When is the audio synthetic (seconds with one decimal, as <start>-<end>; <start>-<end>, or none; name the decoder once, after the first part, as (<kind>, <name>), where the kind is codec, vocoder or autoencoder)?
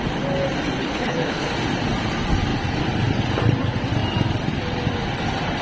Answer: 0.8-1.5 (codec, HILCodec)